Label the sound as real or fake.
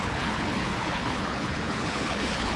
fake